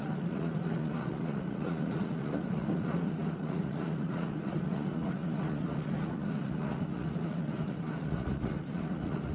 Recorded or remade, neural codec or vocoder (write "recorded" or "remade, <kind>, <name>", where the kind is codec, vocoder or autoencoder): remade, vocoder, Vocos